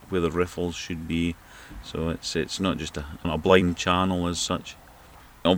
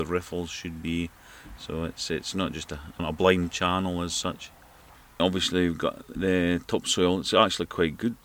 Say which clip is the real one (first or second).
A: second